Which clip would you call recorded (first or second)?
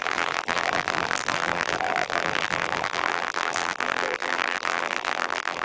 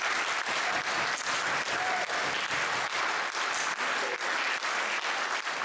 second